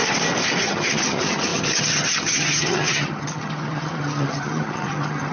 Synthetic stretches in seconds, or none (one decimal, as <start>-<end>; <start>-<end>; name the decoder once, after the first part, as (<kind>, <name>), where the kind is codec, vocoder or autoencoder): 0.6-5.3 (vocoder, HiFi-GAN)